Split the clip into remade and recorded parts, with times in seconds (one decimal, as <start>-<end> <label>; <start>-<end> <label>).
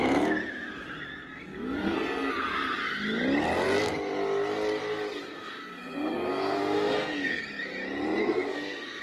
0.0-1.3 recorded; 1.3-2.3 remade; 2.3-5.3 recorded; 5.3-7.4 remade; 7.4-8.2 recorded; 8.2-9.0 remade